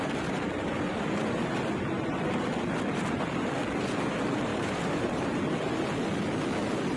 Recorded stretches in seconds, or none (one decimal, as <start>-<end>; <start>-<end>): 0.0-4.5; 5.4-7.0